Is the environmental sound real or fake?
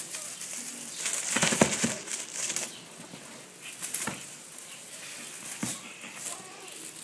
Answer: real